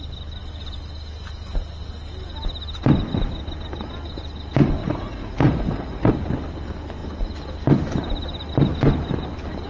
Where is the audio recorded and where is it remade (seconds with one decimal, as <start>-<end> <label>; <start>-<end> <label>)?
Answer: 0.0-4.8 recorded; 4.8-6.1 remade; 6.1-9.7 recorded